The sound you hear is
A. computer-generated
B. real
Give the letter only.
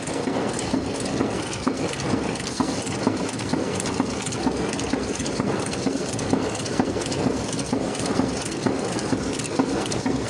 A